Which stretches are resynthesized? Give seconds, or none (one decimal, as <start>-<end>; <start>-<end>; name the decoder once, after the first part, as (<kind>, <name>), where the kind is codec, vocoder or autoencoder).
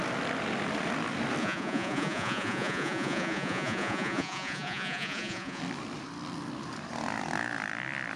1.4-5.6 (vocoder, Vocos)